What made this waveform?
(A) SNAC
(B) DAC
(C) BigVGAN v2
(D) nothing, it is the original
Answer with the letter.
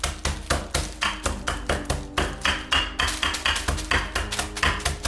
D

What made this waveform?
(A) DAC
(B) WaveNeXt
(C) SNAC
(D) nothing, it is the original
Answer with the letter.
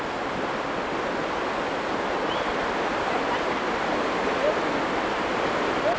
D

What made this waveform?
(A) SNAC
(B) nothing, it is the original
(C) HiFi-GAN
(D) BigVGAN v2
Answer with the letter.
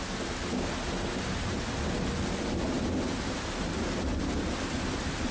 B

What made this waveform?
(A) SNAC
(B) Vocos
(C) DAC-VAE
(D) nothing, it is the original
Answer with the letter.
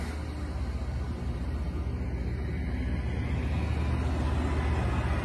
D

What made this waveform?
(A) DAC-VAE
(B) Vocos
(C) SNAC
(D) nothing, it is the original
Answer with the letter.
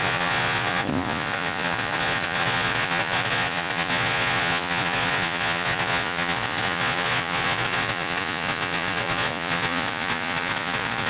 B